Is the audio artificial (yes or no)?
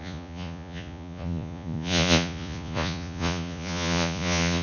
yes